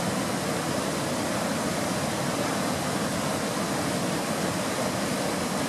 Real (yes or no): yes